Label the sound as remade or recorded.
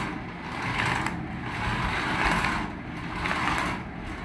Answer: recorded